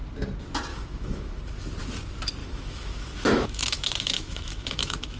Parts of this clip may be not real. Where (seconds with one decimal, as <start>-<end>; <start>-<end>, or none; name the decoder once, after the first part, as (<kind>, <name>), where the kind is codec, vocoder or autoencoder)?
0.7-1.4 (autoencoder, DAC-VAE); 2.4-5.2